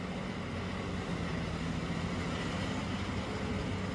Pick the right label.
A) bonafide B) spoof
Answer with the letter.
A